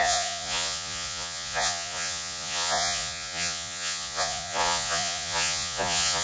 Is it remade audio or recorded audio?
remade